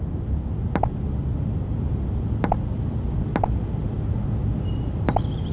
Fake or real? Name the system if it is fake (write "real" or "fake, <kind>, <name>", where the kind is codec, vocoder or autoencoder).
real